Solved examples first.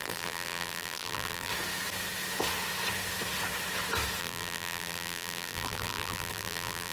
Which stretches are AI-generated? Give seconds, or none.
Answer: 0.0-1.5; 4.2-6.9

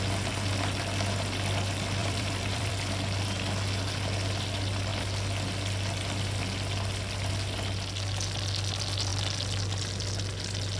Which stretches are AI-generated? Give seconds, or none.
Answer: 2.0-2.7